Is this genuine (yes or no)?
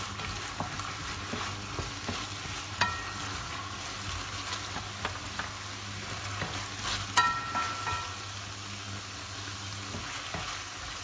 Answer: yes